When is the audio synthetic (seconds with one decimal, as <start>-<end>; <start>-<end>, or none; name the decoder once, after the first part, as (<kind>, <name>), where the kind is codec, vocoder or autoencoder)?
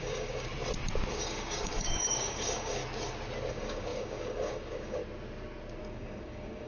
0.0-0.5 (codec, DAC); 1.1-2.8; 3.5-5.0; 5.8-6.7